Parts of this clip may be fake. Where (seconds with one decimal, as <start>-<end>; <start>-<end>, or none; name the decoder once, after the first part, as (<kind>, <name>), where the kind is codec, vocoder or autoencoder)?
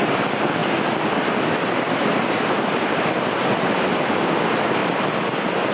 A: none